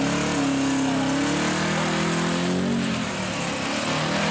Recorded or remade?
recorded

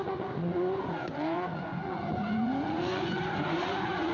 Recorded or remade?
remade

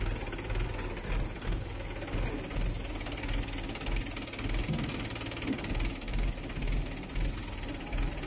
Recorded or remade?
recorded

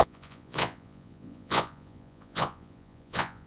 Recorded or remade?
remade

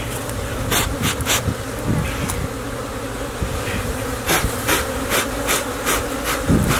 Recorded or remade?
remade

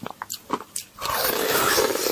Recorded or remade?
recorded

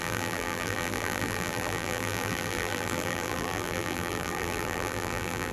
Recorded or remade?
remade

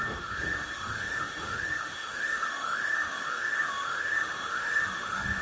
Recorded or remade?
remade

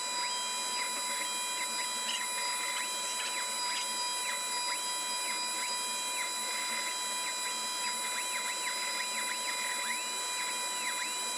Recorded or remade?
recorded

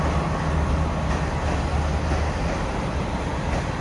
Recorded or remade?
recorded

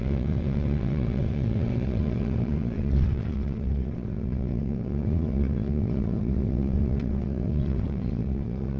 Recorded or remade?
remade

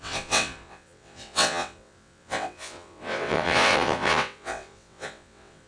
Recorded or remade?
remade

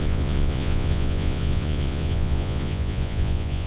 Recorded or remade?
remade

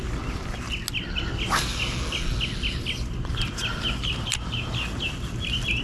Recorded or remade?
recorded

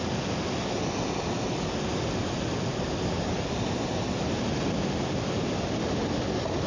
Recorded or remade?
recorded